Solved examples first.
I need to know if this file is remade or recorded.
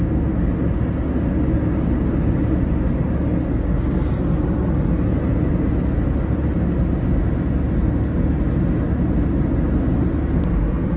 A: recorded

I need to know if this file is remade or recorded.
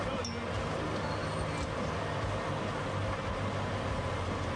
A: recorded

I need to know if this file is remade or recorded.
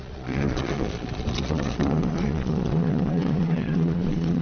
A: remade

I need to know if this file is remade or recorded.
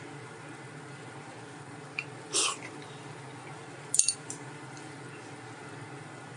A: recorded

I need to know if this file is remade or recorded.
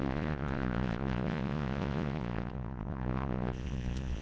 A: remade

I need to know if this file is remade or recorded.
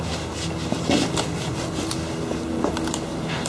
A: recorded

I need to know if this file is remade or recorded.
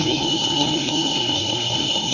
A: remade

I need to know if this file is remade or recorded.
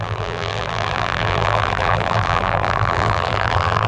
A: remade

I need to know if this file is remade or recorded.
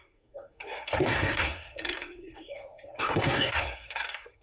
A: remade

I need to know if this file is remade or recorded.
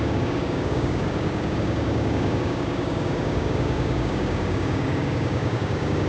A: remade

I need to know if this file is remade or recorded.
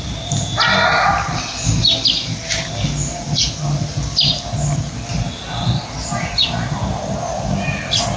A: recorded